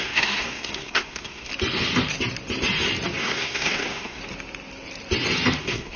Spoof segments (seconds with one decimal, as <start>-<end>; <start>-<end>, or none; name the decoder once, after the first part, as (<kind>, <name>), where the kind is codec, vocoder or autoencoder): 0.0-1.5 (codec, SNAC); 3.2-4.2; 5.6-6.0